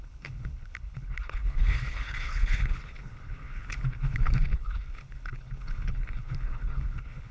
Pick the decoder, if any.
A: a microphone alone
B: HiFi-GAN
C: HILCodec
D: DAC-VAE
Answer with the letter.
C